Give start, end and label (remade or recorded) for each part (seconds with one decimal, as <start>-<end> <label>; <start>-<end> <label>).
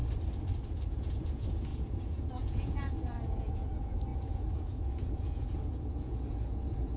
0.0-0.9 recorded; 0.9-7.0 remade